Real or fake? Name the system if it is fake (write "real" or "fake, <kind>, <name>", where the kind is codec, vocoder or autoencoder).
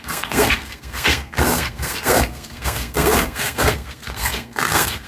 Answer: fake, codec, SNAC